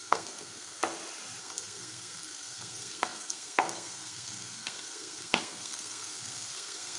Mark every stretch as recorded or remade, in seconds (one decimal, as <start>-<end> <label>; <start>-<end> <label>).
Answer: 0.0-0.8 remade; 0.8-1.4 recorded; 1.4-7.0 remade